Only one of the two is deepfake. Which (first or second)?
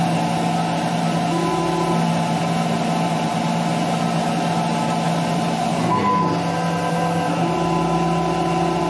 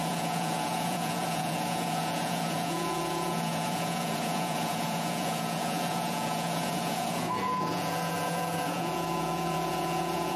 second